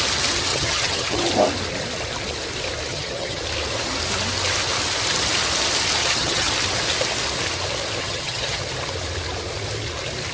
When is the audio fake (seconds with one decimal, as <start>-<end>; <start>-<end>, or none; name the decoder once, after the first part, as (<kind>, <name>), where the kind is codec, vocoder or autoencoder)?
0.5-1.2 (vocoder, HiFi-GAN); 2.9-3.4; 6.0-6.5; 8.0-8.6